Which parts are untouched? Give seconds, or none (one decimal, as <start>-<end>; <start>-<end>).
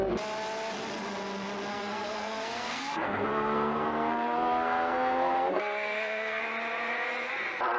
0.0-1.7; 6.4-7.8